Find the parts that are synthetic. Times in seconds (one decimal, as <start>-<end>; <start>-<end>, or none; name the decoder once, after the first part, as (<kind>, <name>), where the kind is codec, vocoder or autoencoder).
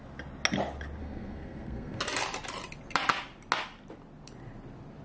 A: 1.0-2.0 (codec, SNAC)